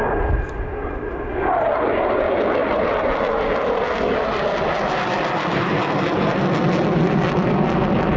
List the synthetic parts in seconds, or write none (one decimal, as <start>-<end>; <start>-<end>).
none